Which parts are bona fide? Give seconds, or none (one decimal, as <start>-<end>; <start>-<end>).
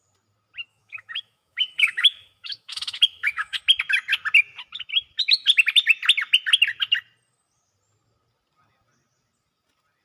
0.0-0.7; 3.6-10.0